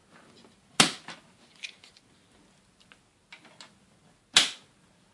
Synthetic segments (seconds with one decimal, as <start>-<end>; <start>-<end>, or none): none